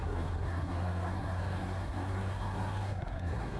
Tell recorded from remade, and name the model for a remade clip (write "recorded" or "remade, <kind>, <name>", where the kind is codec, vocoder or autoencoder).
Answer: remade, codec, SNAC